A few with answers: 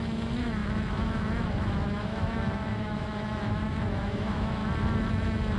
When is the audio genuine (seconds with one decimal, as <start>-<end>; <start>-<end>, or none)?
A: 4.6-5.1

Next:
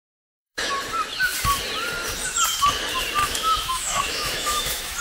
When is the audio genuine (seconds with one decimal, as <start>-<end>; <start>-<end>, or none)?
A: 0.7-3.2

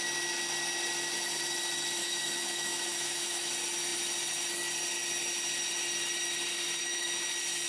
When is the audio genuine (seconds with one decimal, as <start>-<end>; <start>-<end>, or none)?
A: 0.0-2.0; 3.5-6.8; 7.3-7.7

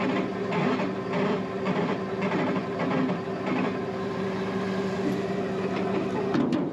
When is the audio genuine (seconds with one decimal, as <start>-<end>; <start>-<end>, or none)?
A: 0.0-6.7

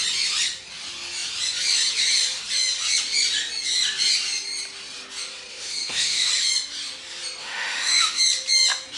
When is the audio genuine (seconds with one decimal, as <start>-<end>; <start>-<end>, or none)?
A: 0.0-5.5; 6.3-7.4; 8.2-9.0

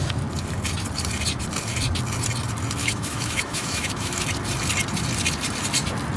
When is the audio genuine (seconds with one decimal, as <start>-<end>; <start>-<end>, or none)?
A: 0.0-2.8; 4.2-6.2

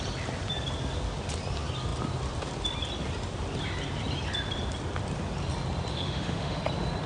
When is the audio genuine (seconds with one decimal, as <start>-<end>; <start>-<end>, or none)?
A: 0.0-5.9; 6.6-7.1